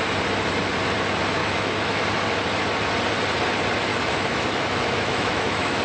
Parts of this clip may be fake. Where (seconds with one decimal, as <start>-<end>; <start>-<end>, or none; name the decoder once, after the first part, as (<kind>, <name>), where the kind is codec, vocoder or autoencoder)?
1.4-2.0 (autoencoder, DAC-VAE); 3.9-5.8